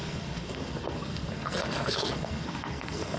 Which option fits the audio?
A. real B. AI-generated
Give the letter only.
B